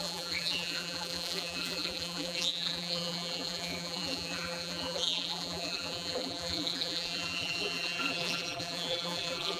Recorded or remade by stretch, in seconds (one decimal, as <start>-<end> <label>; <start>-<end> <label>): 0.0-9.6 remade